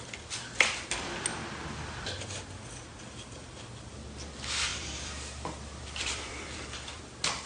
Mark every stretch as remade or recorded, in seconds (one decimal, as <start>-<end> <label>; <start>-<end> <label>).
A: 0.0-4.7 recorded; 4.7-7.0 remade; 7.0-7.5 recorded